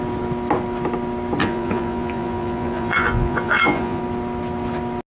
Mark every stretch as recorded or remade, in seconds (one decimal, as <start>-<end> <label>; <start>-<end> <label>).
0.0-1.4 recorded; 1.4-4.0 remade; 4.0-5.1 recorded